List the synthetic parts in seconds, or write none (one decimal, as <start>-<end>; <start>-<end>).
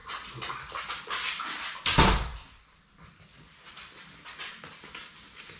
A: none